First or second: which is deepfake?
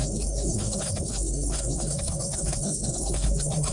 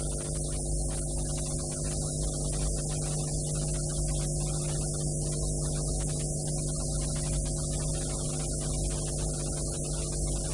first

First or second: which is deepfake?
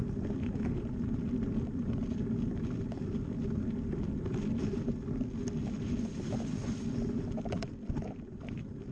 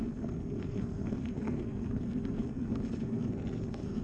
second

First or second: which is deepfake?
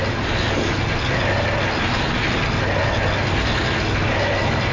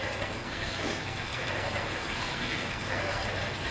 second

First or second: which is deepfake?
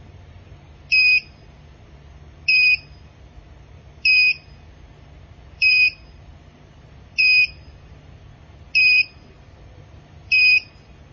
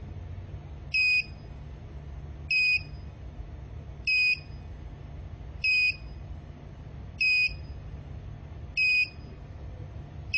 first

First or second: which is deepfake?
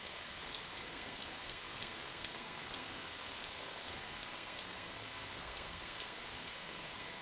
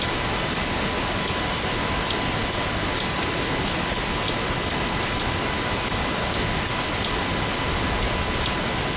first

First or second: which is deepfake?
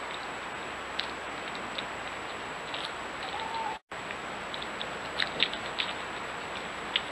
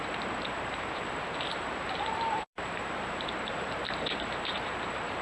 second